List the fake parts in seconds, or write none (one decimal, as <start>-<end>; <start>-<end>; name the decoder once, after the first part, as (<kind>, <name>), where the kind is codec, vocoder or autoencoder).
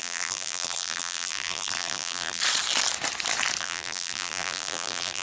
0.0-2.4 (vocoder, BigVGAN v2); 3.6-5.2